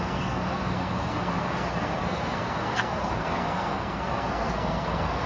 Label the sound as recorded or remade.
remade